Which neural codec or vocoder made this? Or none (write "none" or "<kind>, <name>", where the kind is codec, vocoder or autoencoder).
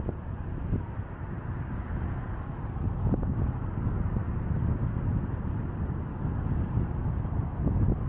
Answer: none